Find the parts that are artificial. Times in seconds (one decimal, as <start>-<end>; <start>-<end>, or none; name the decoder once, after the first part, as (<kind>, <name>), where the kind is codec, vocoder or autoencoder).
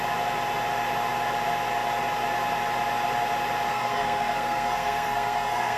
3.7-5.8 (codec, SNAC)